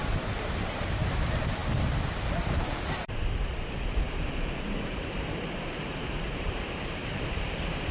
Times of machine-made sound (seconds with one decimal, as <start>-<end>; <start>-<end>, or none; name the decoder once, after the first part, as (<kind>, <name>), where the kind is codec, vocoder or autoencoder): 0.0-7.0 (vocoder, BigVGAN v2)